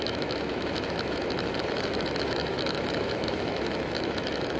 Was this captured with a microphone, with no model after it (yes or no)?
no